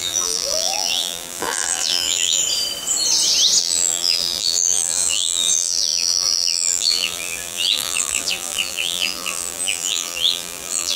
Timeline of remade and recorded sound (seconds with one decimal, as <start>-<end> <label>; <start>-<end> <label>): 0.0-2.4 remade; 2.4-3.6 recorded; 3.6-11.0 remade